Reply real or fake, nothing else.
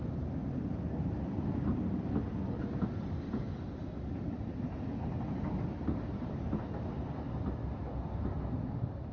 real